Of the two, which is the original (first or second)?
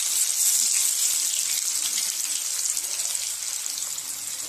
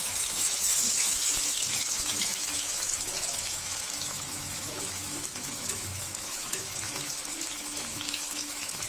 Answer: first